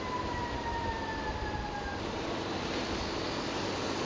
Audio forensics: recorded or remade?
recorded